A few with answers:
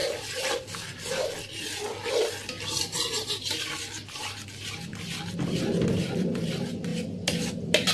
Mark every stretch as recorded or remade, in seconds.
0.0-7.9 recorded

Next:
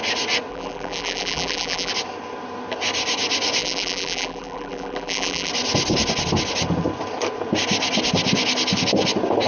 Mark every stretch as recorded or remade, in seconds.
0.0-0.5 recorded; 0.5-1.9 remade; 1.9-3.6 recorded; 3.6-5.5 remade; 5.5-9.5 recorded

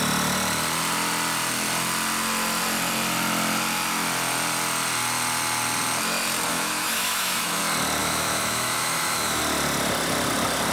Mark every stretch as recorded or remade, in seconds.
0.0-6.5 recorded; 6.5-7.6 remade; 7.6-8.0 recorded; 8.0-9.4 remade; 9.4-10.7 recorded

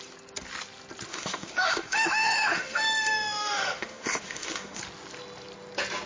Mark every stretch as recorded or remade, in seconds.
0.0-1.1 recorded; 1.1-4.8 remade; 4.8-6.1 recorded

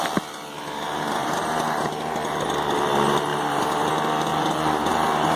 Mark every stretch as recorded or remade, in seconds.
0.0-1.2 recorded; 1.2-2.0 remade; 2.0-3.3 recorded; 3.3-3.9 remade; 3.9-4.3 recorded; 4.3-5.4 remade

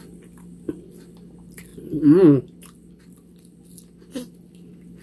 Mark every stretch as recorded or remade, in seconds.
0.0-5.0 recorded